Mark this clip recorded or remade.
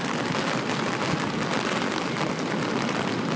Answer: recorded